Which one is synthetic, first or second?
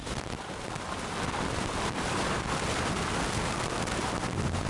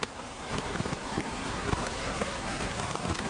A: second